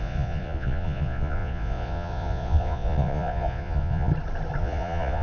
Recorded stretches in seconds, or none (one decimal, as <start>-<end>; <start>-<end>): 4.1-4.6